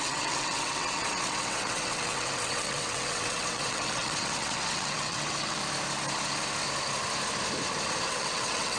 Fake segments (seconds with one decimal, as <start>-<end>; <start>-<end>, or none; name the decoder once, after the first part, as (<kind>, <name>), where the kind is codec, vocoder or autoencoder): 0.0-5.6 (vocoder, WaveNeXt); 8.1-8.8